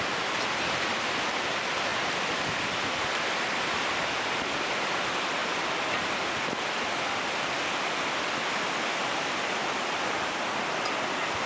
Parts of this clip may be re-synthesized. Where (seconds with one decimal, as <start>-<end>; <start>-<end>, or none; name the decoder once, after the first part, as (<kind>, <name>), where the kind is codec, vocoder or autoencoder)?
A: 1.9-3.0 (vocoder, BigVGAN v2); 5.4-6.9

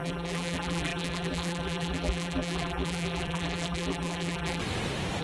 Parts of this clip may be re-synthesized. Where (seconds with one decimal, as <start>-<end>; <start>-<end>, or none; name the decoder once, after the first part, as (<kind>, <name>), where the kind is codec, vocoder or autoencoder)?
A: 0.0-4.6 (vocoder, BigVGAN v2)